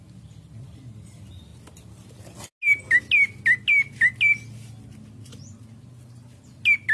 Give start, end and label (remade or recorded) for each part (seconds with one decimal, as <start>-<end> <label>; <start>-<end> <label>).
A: 0.0-6.9 recorded